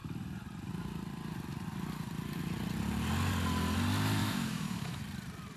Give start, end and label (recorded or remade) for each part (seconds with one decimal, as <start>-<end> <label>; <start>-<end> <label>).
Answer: 0.0-4.2 recorded; 4.2-5.0 remade; 5.0-5.6 recorded